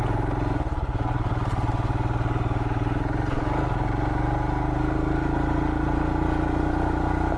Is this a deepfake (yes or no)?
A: no